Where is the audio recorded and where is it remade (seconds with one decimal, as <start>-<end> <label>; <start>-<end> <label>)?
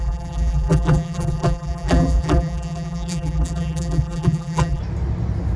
0.0-4.8 remade; 4.8-5.6 recorded